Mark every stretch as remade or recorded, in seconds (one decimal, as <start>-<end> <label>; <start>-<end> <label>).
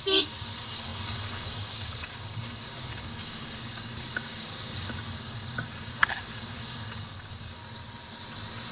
0.0-7.6 remade; 7.6-8.7 recorded